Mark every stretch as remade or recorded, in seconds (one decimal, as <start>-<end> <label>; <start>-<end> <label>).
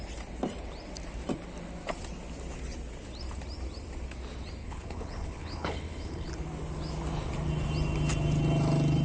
0.0-4.6 recorded; 4.6-6.3 remade; 6.3-9.0 recorded